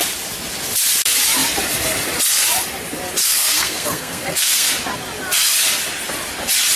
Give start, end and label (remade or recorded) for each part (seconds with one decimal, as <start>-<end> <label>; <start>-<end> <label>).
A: 0.0-3.2 recorded; 3.2-4.7 remade; 4.7-6.8 recorded